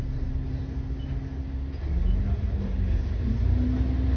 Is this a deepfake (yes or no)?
no